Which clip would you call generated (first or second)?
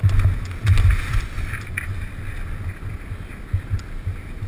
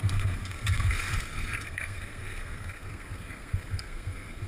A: second